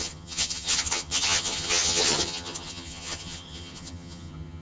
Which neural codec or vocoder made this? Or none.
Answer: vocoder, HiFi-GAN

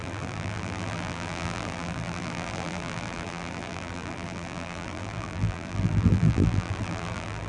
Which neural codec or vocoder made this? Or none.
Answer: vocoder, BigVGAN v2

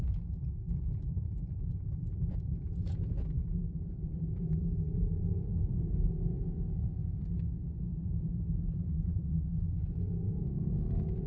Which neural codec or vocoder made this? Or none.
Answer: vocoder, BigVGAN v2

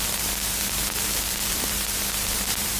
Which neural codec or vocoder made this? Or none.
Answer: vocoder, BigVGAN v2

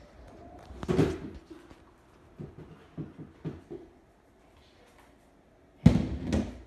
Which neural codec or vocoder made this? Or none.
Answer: none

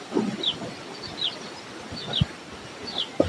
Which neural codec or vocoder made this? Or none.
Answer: none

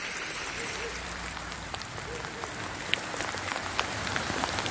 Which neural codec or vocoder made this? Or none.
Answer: vocoder, BigVGAN v2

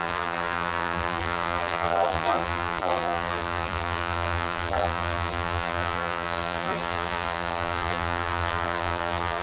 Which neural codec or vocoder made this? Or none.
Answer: vocoder, BigVGAN v2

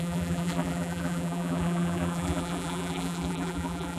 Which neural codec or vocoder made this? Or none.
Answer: vocoder, BigVGAN v2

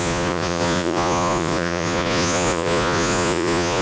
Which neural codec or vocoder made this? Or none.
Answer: vocoder, Vocos